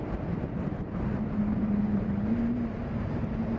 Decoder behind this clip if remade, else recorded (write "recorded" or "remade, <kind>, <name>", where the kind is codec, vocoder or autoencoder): remade, vocoder, BigVGAN v2